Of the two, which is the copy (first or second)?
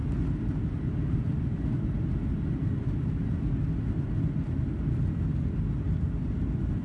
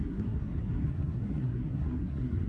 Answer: second